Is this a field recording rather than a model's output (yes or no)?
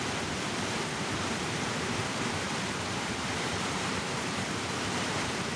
no